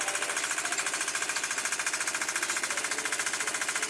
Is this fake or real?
real